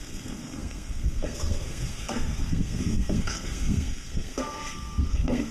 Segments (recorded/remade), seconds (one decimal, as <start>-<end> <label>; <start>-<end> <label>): 0.0-5.5 remade

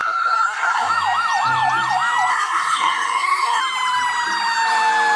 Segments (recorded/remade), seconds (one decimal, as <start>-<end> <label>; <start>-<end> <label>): 0.0-0.9 remade; 0.9-2.3 recorded; 2.3-3.6 remade; 3.6-5.2 recorded

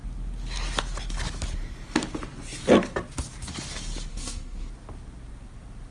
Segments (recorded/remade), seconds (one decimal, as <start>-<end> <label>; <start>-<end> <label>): 0.0-4.1 recorded; 4.1-4.7 remade; 4.7-5.9 recorded

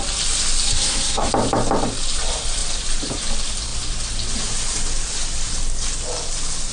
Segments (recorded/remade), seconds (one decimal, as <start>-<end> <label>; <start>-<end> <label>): 0.0-0.7 recorded; 0.7-1.3 remade; 1.3-6.7 recorded

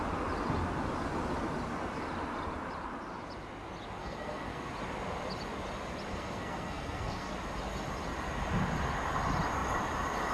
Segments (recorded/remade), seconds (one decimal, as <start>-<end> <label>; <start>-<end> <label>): 0.0-4.0 recorded; 4.0-4.7 remade; 4.7-6.1 recorded; 6.1-7.3 remade; 7.3-10.3 recorded

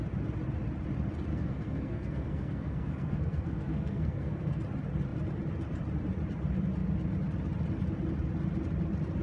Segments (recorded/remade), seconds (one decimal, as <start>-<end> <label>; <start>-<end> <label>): 0.0-1.3 recorded; 1.3-4.6 remade; 4.6-9.2 recorded

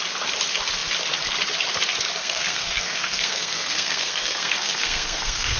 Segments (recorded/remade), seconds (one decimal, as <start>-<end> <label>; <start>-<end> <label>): 0.0-2.2 recorded; 2.2-5.6 remade